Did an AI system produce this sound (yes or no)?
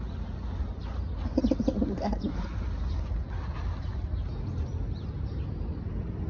no